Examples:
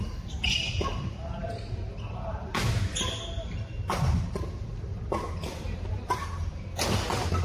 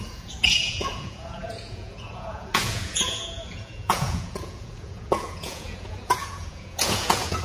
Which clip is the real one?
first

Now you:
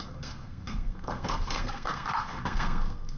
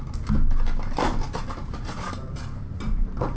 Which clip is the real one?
second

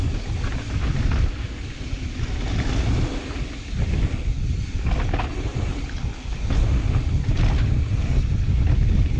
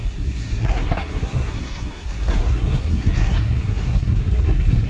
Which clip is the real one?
first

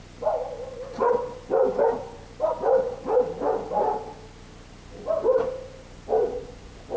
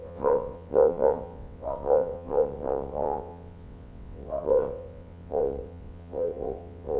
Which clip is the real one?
first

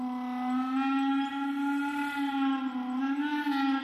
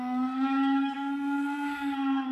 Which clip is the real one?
first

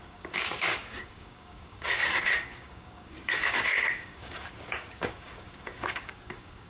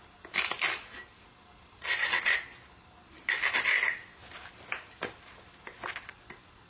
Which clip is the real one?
second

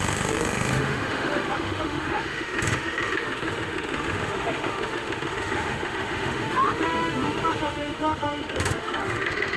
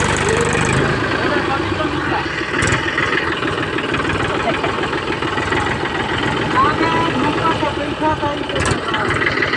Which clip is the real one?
second